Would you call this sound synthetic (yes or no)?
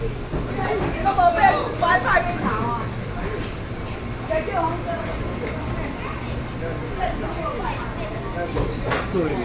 no